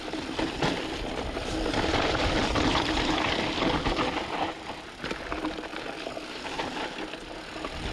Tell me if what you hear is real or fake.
fake